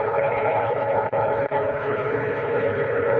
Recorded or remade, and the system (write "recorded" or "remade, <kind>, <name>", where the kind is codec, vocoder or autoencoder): remade, codec, HILCodec